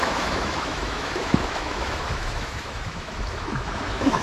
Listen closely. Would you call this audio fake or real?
fake